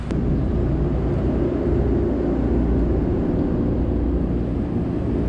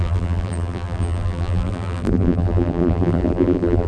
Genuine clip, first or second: first